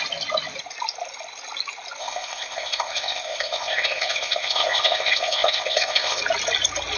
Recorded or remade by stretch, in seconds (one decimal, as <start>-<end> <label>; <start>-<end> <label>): 0.0-2.0 recorded; 2.0-6.2 remade; 6.2-7.0 recorded